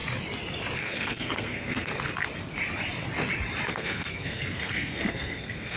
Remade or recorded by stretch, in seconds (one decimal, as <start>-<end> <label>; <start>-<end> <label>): 0.0-0.8 recorded; 0.8-1.9 remade; 1.9-3.7 recorded; 3.7-5.8 remade